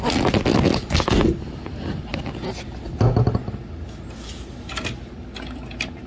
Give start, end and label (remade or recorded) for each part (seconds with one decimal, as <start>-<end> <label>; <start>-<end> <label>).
0.0-6.1 recorded